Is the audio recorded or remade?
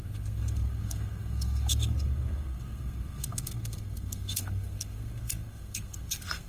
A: remade